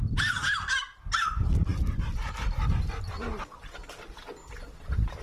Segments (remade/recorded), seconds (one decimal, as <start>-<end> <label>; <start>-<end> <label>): 0.0-5.2 recorded